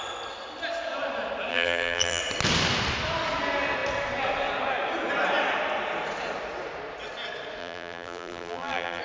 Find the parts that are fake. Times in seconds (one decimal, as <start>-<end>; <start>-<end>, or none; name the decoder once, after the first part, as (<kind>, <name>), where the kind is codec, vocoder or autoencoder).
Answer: 1.5-2.2 (vocoder, BigVGAN v2); 7.6-9.0